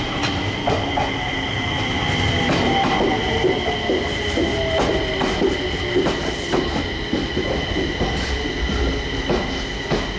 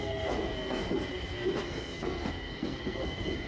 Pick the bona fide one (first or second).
first